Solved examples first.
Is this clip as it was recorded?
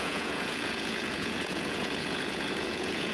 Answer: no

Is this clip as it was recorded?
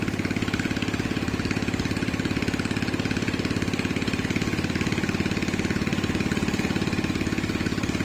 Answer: yes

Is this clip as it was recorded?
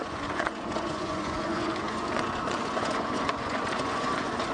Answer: no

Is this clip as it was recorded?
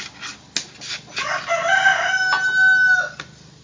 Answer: yes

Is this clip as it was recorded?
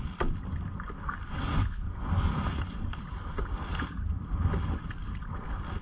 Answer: yes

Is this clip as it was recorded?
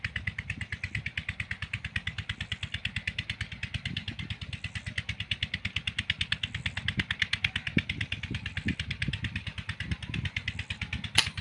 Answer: yes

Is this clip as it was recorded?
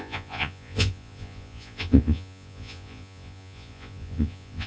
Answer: no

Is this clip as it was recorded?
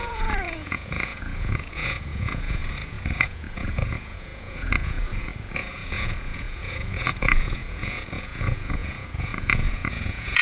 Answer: no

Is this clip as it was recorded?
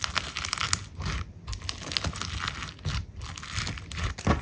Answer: yes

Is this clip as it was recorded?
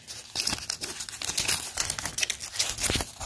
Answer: yes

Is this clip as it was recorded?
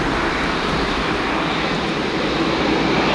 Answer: yes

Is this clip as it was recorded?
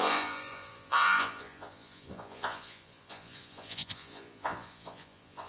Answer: no